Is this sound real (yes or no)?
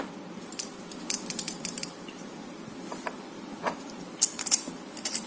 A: no